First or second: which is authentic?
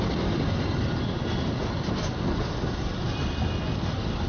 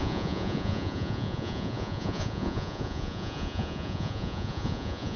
first